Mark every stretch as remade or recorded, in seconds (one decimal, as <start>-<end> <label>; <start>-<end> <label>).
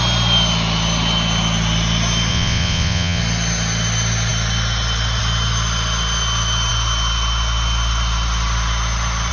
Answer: 0.0-2.3 recorded; 2.3-3.2 remade; 3.2-9.3 recorded